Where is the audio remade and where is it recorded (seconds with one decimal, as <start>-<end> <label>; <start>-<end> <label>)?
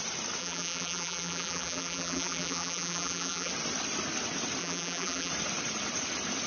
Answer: 0.0-0.4 recorded; 0.4-3.5 remade; 3.5-4.6 recorded; 4.6-5.3 remade; 5.3-6.5 recorded